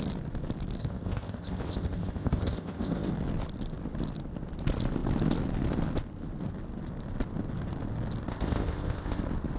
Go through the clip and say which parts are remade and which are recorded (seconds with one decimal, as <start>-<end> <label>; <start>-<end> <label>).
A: 0.0-0.8 recorded; 0.8-3.1 remade; 3.1-8.3 recorded; 8.3-9.2 remade; 9.2-9.6 recorded